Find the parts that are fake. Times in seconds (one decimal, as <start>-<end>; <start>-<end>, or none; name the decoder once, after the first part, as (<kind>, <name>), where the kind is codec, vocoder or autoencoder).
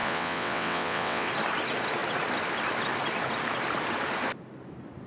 0.0-1.3 (vocoder, WaveNeXt)